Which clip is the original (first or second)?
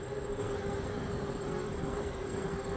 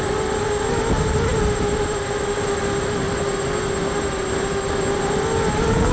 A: second